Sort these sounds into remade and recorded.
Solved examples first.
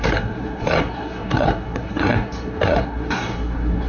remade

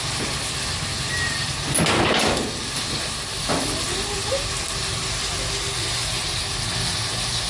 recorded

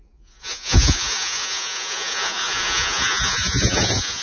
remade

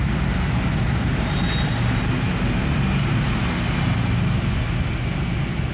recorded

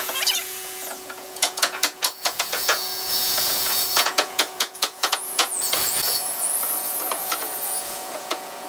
remade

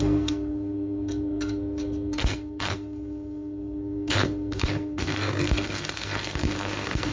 remade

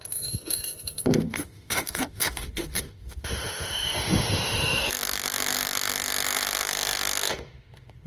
remade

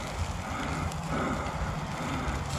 recorded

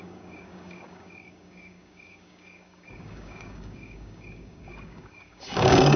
remade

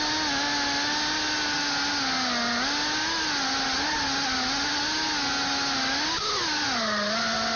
recorded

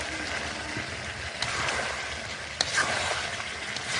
recorded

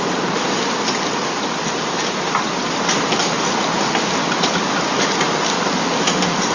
recorded